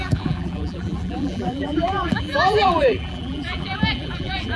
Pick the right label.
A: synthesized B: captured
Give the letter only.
A